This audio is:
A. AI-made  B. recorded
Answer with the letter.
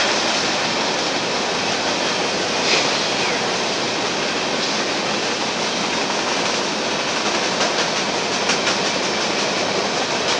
B